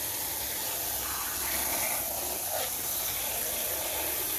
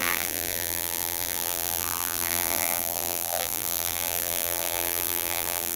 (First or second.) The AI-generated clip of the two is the second